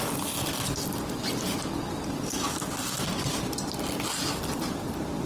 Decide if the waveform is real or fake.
real